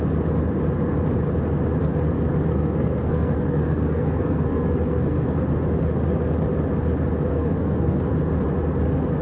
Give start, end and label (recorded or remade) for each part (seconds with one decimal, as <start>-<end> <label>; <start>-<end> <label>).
0.0-2.5 recorded; 2.5-5.4 remade; 5.4-7.3 recorded; 7.3-8.0 remade; 8.0-9.2 recorded